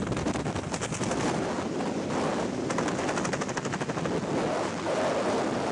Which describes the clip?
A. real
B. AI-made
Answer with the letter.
A